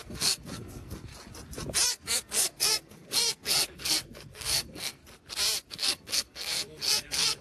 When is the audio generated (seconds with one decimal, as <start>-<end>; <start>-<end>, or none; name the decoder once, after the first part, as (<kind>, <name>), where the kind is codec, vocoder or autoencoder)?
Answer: 0.0-1.1 (codec, SNAC); 1.9-5.0; 5.7-7.4